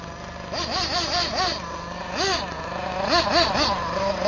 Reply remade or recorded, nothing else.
recorded